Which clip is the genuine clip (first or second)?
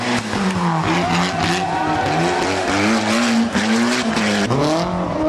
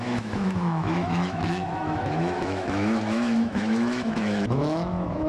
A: first